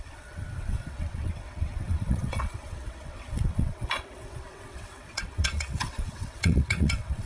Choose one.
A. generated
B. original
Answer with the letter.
A